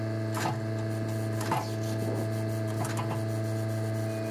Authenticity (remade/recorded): recorded